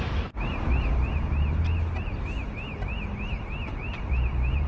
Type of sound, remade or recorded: recorded